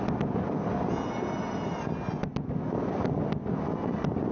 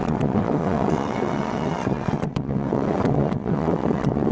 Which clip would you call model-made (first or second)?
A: second